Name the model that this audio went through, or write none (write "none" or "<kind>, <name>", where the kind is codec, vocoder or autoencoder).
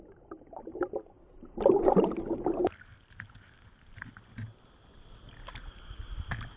none